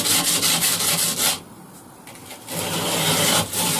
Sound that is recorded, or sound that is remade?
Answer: recorded